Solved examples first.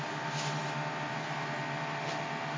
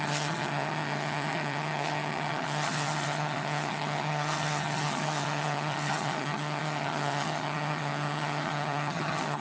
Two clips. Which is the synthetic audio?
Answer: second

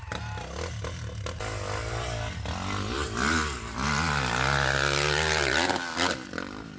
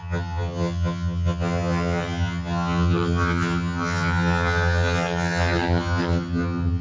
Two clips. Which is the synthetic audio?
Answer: second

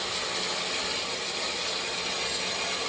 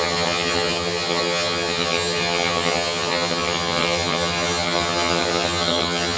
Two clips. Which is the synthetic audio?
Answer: second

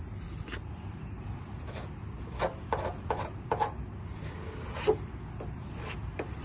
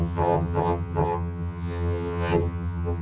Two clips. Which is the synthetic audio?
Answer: second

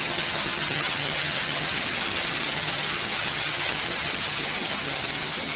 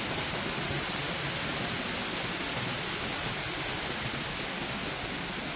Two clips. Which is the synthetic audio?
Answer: first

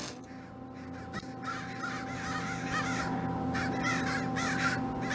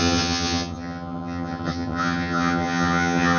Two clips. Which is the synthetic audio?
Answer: second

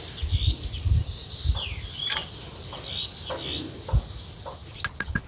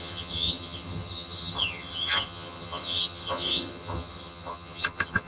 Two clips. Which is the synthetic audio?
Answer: second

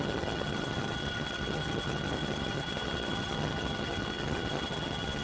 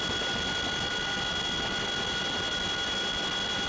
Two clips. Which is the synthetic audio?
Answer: first